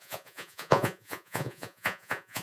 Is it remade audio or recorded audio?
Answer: remade